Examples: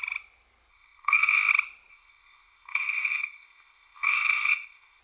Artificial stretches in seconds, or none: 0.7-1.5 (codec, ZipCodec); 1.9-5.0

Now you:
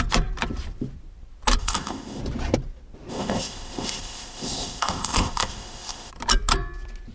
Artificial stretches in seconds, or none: 1.6-2.2 (codec, ZipCodec); 3.1-6.1